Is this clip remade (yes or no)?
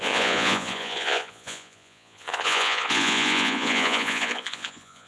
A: yes